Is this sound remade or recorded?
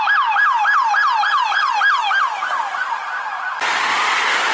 recorded